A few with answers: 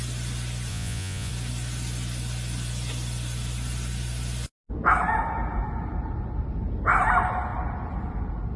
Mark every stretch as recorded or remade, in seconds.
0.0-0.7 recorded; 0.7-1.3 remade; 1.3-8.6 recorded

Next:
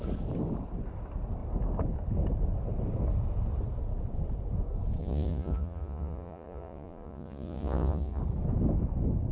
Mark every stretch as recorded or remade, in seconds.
0.0-5.0 recorded; 5.0-8.2 remade; 8.2-9.3 recorded

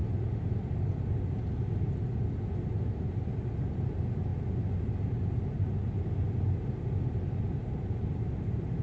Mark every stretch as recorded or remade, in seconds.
0.0-3.6 recorded; 3.6-4.3 remade; 4.3-7.5 recorded; 7.5-8.8 remade

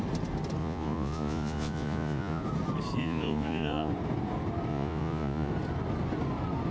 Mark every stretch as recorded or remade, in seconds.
0.0-0.6 recorded; 0.6-2.4 remade; 2.4-3.0 recorded; 3.0-3.9 remade; 3.9-4.7 recorded; 4.7-5.5 remade; 5.5-6.7 recorded